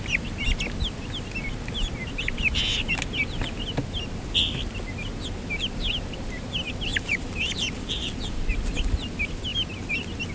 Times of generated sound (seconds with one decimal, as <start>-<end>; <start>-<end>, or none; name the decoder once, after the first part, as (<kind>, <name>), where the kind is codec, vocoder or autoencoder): 6.9-8.6 (vocoder, BigVGAN v2)